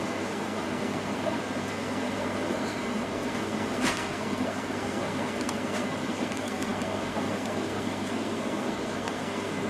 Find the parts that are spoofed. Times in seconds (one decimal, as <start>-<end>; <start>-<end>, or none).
0.0-9.7